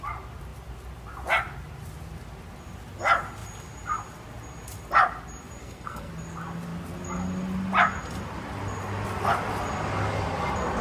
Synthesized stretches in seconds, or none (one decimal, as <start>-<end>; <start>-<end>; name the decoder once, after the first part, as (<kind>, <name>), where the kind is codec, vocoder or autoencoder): 5.6-6.1 (codec, SNAC)